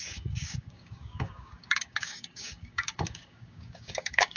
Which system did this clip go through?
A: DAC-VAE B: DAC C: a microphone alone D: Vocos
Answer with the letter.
B